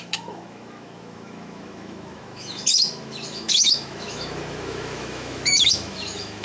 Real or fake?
fake